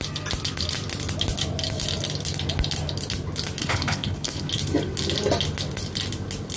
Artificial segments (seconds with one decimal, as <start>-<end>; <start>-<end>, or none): 3.6-4.5